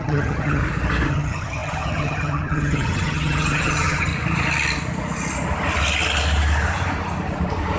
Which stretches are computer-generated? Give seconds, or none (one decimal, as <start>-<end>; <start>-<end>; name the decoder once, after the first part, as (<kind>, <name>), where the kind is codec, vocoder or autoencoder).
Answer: 0.0-0.6 (vocoder, HiFi-GAN); 1.1-4.1